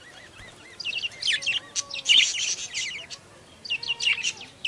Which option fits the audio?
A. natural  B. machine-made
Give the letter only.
A